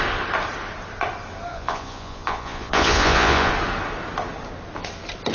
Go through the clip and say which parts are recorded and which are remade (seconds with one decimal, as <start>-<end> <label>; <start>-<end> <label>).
0.0-1.5 recorded; 1.5-3.5 remade; 3.5-5.3 recorded

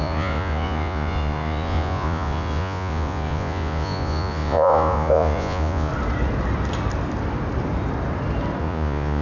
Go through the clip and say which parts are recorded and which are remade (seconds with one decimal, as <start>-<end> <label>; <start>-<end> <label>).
0.0-5.9 remade; 5.9-8.6 recorded; 8.6-9.2 remade

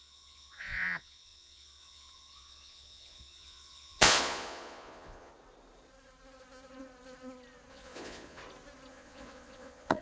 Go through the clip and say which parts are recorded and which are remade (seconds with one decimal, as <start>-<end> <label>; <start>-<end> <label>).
0.0-5.3 remade; 5.3-7.7 recorded; 7.7-8.4 remade; 8.4-8.9 recorded; 8.9-10.0 remade

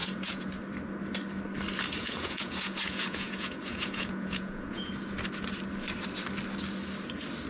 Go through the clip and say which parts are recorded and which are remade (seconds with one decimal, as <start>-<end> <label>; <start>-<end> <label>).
0.0-0.5 remade; 0.5-2.0 recorded; 2.0-4.9 remade; 4.9-7.5 recorded

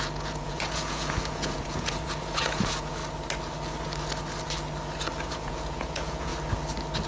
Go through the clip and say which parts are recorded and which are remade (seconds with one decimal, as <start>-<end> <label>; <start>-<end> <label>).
0.0-3.0 remade; 3.0-5.3 recorded; 5.3-6.3 remade; 6.3-7.1 recorded

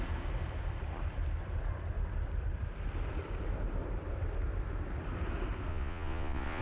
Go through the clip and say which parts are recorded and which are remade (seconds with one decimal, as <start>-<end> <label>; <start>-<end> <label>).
0.0-5.7 recorded; 5.7-6.6 remade

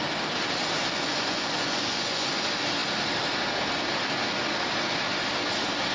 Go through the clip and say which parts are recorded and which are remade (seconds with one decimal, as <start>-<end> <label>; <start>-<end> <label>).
0.0-0.8 recorded; 0.8-2.3 remade; 2.3-5.9 recorded

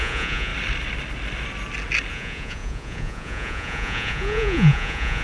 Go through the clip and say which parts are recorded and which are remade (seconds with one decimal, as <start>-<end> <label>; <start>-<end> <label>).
0.0-0.5 remade; 0.5-2.1 recorded; 2.1-5.2 remade